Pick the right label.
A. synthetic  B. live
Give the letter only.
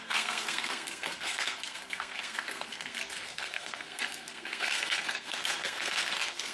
A